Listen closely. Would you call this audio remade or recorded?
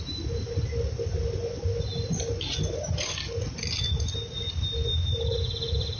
recorded